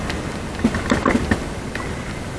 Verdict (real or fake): real